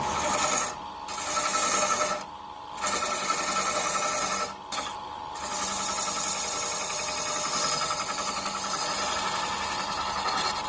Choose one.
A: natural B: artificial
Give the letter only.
A